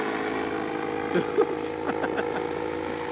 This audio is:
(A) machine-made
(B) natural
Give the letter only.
B